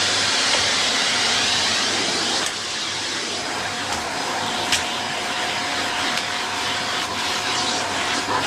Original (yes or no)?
no